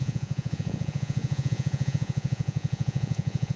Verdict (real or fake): fake